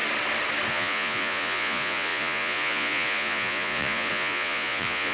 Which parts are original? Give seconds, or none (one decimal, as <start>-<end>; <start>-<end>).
0.0-0.7